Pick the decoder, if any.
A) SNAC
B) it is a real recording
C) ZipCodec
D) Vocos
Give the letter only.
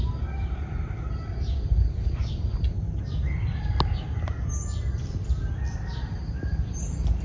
B